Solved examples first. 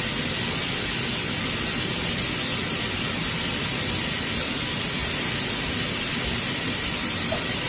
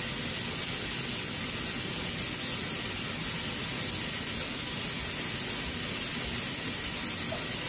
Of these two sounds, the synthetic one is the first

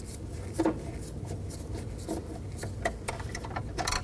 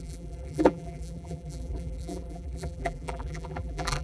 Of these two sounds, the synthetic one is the second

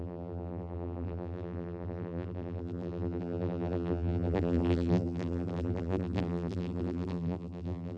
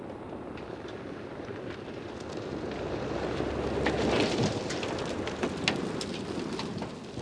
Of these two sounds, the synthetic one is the first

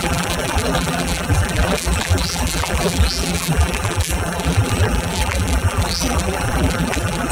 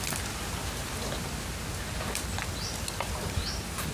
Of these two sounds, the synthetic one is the first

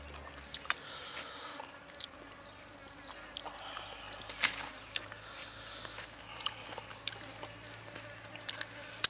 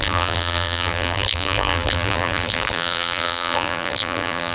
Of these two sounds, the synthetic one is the second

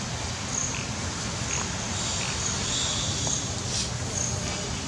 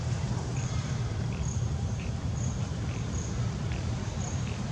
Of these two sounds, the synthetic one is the second